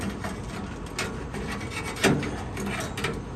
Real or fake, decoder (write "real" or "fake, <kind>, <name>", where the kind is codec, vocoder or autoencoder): real